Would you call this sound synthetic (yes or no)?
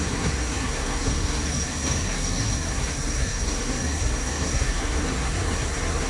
yes